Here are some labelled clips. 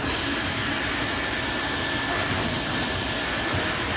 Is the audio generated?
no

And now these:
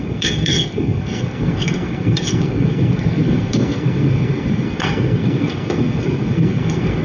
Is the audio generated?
yes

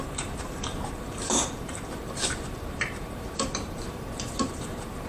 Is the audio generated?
yes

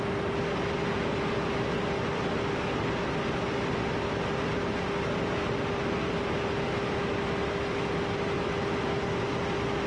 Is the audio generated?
no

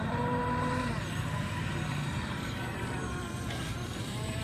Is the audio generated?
yes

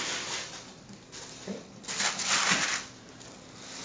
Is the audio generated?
no